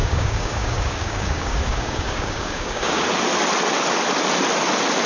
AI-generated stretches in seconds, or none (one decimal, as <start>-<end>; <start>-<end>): 0.0-3.1